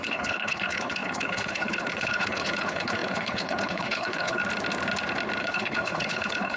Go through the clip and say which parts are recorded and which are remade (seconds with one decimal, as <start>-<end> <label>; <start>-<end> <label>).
0.0-4.4 remade; 4.4-5.4 recorded; 5.4-6.6 remade